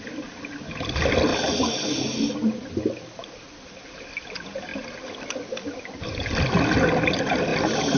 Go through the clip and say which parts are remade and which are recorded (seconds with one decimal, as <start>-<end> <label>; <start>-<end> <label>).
0.0-7.5 remade; 7.5-8.0 recorded